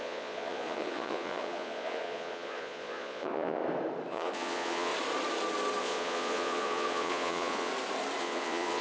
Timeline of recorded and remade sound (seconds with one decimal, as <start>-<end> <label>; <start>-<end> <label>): 0.0-3.6 remade; 3.6-4.1 recorded; 4.1-4.9 remade; 4.9-5.8 recorded; 5.8-7.7 remade; 7.7-8.2 recorded; 8.2-8.8 remade